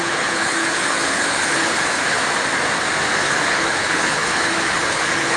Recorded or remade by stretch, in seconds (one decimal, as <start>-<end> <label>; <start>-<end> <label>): 0.0-2.2 remade; 2.2-3.2 recorded; 3.2-5.4 remade